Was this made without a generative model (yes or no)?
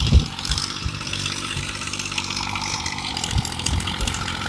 no